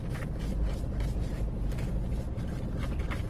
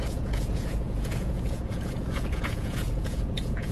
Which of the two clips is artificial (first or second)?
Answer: second